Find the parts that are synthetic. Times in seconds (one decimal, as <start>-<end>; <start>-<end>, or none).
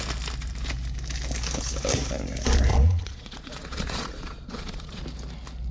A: 2.7-5.0